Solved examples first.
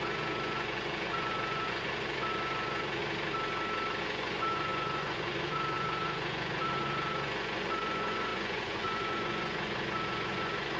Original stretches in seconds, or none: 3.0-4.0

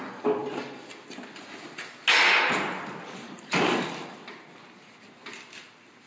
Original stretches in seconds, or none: 0.0-6.1

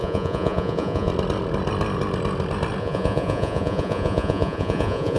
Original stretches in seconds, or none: 1.1-2.8

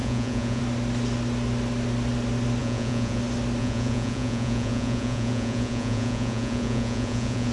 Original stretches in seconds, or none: 0.6-2.6; 3.2-3.6